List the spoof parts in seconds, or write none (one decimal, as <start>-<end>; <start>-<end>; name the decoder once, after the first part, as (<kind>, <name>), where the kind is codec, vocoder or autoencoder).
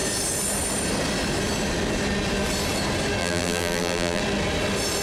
3.2-4.2 (vocoder, BigVGAN v2)